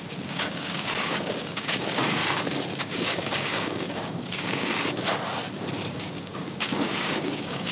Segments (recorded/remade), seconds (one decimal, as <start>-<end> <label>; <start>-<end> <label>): 0.0-2.2 remade; 2.2-2.8 recorded; 2.8-4.7 remade; 4.7-6.0 recorded; 6.0-7.7 remade